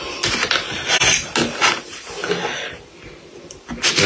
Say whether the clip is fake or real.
real